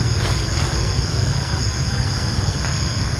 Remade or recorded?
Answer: remade